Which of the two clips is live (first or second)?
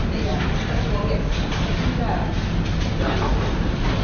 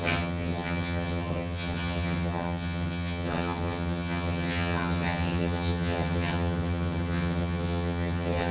first